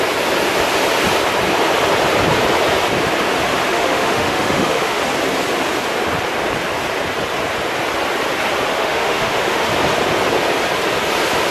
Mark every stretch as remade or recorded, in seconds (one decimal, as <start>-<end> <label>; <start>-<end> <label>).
0.0-3.7 recorded; 3.7-5.0 remade; 5.0-8.7 recorded; 8.7-9.7 remade; 9.7-11.5 recorded